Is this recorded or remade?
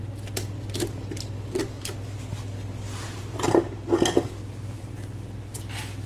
recorded